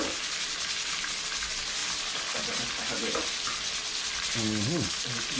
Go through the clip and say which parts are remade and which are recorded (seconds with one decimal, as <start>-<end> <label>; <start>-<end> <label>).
0.0-5.4 recorded